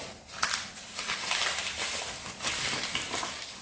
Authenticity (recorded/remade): recorded